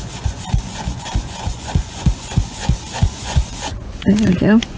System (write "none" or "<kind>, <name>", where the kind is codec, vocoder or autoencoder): vocoder, Vocos